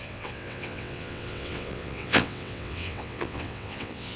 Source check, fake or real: fake